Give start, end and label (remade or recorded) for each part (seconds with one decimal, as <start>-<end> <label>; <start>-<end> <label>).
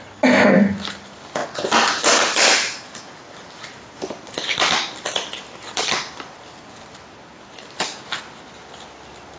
0.0-9.4 recorded